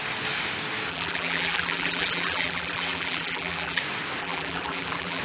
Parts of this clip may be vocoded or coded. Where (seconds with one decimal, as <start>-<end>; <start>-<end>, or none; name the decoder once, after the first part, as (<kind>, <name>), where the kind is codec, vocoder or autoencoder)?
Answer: 0.9-3.8 (vocoder, BigVGAN v2); 4.2-5.2